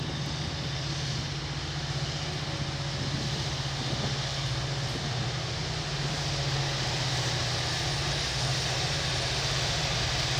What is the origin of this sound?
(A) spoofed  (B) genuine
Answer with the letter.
B